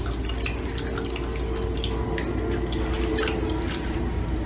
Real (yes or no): yes